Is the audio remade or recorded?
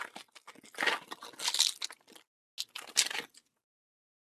recorded